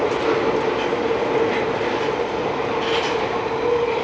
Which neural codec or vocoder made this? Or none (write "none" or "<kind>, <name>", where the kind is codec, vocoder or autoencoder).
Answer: none